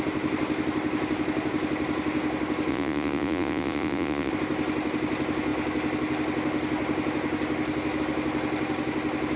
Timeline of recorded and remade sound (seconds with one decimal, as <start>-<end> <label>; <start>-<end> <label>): 0.0-2.7 recorded; 2.7-4.3 remade; 4.3-9.4 recorded